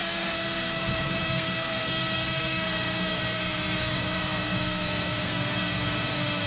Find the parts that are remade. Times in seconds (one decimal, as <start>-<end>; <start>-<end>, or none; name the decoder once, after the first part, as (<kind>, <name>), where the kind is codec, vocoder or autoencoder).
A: 0.0-6.5 (codec, SNAC)